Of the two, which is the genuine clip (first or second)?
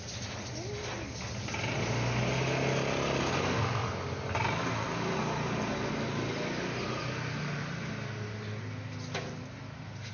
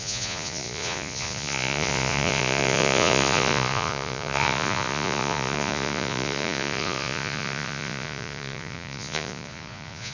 first